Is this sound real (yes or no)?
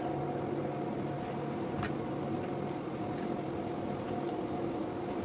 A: yes